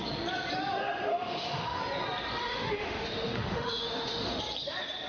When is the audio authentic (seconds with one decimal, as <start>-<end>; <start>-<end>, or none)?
0.0-1.1; 1.8-2.4; 4.4-5.1

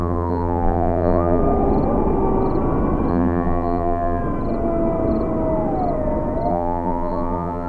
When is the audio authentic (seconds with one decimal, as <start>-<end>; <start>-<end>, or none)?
1.4-3.1; 4.2-6.5

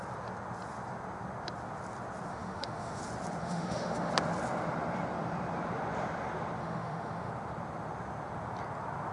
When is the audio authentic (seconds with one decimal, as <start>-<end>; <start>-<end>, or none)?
0.0-2.3; 3.0-3.4; 4.1-6.6; 7.3-9.1

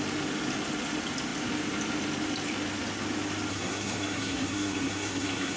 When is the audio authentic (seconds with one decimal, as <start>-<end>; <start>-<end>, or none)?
0.0-3.5

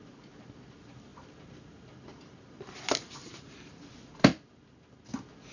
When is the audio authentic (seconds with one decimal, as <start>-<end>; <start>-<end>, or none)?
0.0-1.1; 2.8-3.2; 3.9-5.5

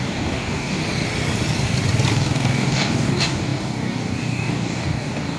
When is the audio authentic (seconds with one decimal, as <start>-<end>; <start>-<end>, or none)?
0.8-2.1

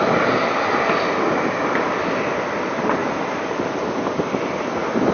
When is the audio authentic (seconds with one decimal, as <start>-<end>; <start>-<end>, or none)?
0.0-5.1

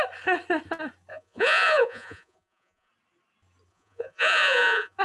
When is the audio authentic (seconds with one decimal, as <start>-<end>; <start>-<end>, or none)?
0.0-1.1; 2.9-3.7